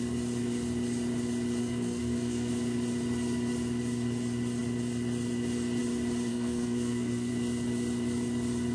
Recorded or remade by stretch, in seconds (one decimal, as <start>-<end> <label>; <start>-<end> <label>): 0.0-1.6 recorded; 1.6-2.5 remade; 2.5-6.3 recorded; 6.3-7.3 remade; 7.3-8.7 recorded